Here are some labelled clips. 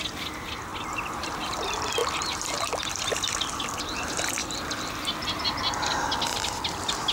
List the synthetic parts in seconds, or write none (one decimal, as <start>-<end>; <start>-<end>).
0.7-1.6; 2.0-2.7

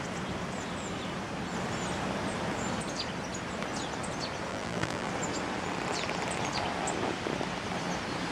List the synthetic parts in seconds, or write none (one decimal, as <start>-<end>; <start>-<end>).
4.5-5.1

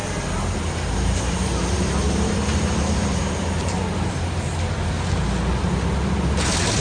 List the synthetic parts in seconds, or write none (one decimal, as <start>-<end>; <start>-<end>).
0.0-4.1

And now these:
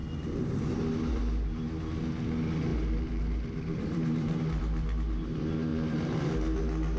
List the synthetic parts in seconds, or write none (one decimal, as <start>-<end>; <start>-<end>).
2.7-4.4; 5.7-6.3